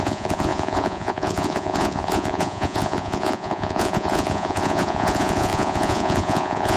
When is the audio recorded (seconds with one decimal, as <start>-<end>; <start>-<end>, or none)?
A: none